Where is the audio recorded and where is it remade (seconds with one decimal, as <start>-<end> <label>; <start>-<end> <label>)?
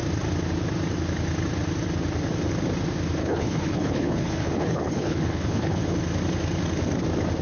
0.0-3.2 recorded; 3.2-5.8 remade; 5.8-7.4 recorded